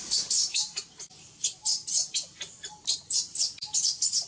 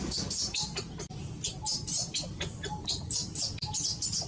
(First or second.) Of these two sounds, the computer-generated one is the first